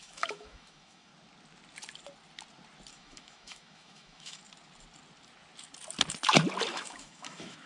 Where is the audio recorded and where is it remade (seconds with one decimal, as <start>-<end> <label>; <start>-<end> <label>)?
0.0-1.1 remade; 1.1-2.9 recorded; 2.9-4.4 remade; 4.4-6.7 recorded; 6.7-7.7 remade